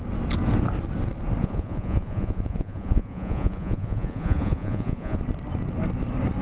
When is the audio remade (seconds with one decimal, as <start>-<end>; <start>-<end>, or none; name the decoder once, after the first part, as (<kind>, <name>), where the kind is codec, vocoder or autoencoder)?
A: 1.4-5.2 (vocoder, Vocos)